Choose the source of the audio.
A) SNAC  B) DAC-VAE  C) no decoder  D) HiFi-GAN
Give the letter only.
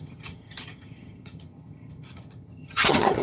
D